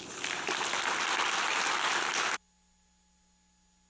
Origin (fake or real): real